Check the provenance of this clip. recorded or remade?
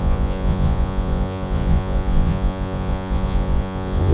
remade